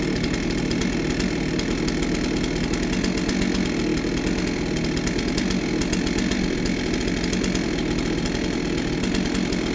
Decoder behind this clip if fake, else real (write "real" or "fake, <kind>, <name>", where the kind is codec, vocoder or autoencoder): real